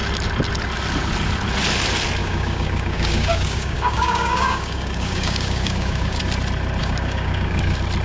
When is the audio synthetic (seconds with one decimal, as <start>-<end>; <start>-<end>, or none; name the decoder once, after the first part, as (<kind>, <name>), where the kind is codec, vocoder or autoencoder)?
2.2-6.2 (codec, DAC); 6.8-7.6